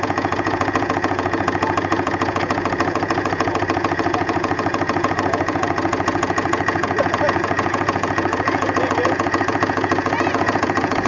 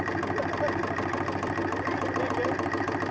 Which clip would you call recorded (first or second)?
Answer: second